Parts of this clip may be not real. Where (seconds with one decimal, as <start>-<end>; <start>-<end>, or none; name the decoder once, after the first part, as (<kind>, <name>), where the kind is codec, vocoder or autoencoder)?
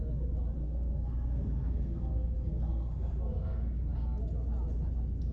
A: 0.6-3.8 (codec, SNAC)